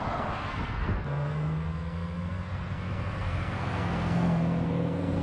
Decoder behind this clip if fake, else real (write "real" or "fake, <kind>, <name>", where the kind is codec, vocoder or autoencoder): fake, codec, SNAC